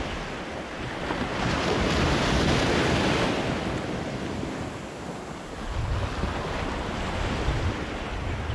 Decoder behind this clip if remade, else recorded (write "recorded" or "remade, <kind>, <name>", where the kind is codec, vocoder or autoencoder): recorded